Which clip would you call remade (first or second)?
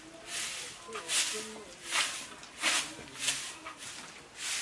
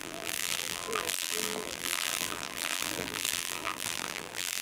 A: second